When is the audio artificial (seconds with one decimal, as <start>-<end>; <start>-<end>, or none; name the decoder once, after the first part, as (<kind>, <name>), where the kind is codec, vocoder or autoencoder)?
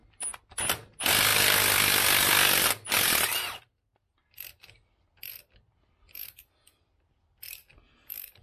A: none